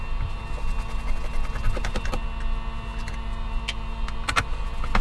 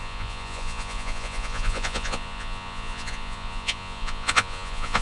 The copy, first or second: second